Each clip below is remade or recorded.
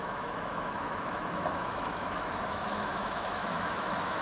remade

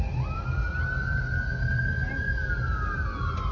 recorded